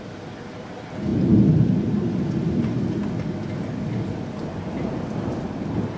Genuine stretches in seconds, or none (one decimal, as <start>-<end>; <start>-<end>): 0.0-6.0